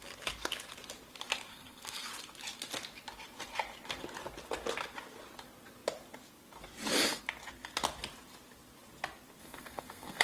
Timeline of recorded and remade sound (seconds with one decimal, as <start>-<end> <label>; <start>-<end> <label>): 0.0-1.5 recorded; 1.5-2.1 remade; 2.1-9.4 recorded; 9.4-10.2 remade